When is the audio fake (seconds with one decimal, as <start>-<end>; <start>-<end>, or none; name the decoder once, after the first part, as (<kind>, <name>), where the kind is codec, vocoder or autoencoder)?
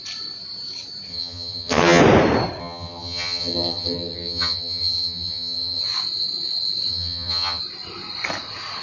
1.1-2.0 (vocoder, HiFi-GAN); 2.6-5.8; 6.9-7.6